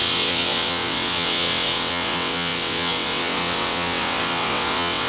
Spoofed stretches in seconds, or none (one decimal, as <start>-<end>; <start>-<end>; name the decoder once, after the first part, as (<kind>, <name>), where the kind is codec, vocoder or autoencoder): 0.0-5.1 (vocoder, WaveNeXt)